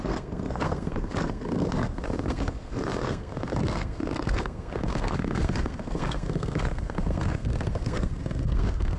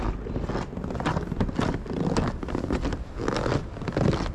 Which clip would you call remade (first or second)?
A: first